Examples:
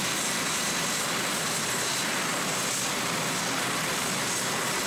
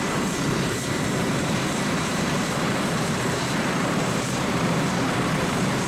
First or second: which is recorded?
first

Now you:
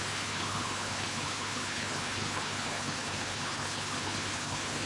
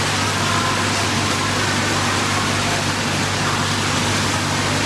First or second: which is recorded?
second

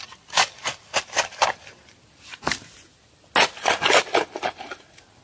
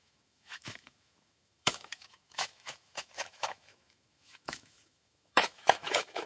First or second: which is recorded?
first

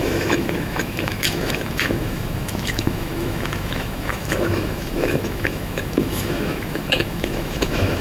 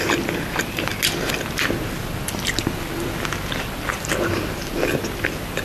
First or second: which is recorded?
second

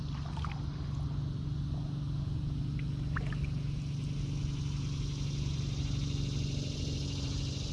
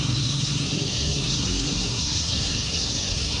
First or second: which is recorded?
first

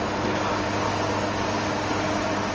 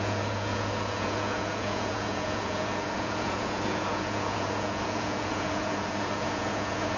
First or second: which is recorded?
first